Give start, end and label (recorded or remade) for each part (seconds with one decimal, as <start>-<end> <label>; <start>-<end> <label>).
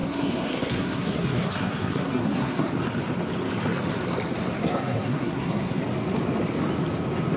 0.0-2.7 remade; 2.7-4.6 recorded; 4.6-5.8 remade; 5.8-7.4 recorded